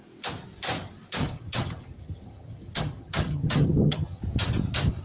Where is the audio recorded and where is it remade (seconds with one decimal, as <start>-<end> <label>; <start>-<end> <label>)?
0.0-1.2 recorded; 1.2-4.2 remade; 4.2-5.0 recorded